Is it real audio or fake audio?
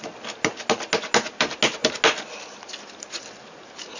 real